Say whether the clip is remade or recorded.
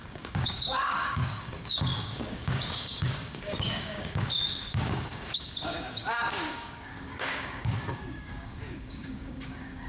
remade